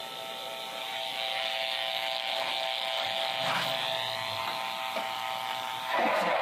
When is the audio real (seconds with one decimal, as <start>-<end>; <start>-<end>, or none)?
0.0-0.8; 3.3-4.4